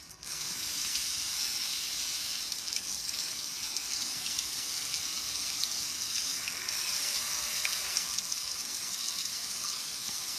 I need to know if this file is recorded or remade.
remade